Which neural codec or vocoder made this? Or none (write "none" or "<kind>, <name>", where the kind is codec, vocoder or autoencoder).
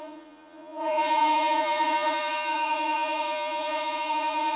vocoder, Vocos